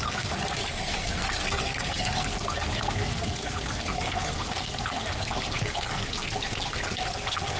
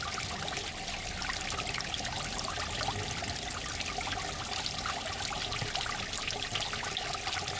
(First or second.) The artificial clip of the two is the first